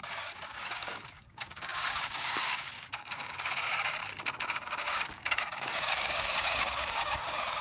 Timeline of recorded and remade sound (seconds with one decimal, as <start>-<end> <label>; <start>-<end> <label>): 0.0-4.0 remade; 4.0-4.5 recorded; 4.5-7.6 remade